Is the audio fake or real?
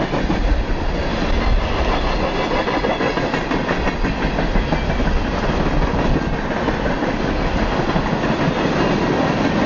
real